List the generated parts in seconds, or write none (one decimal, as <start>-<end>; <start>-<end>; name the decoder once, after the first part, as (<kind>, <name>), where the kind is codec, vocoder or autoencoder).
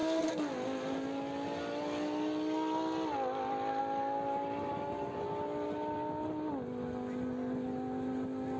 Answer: none